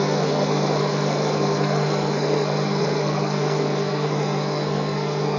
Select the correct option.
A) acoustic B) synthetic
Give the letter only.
B